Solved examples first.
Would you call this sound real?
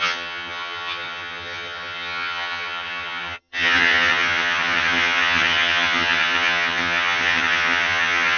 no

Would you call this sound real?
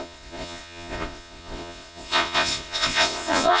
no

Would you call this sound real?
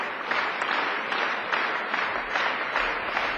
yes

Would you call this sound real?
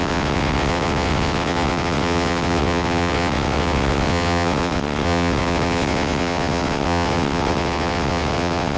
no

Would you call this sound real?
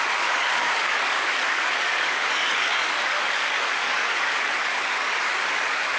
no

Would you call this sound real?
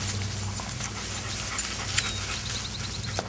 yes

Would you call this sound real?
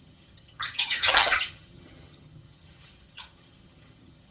no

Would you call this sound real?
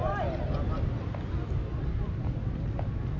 yes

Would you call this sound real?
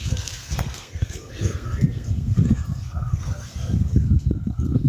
no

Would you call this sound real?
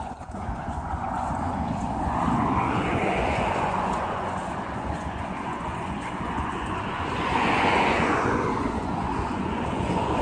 no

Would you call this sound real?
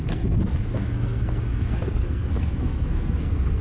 no